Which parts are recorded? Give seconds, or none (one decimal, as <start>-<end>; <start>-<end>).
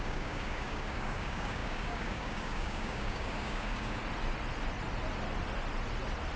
4.0-6.4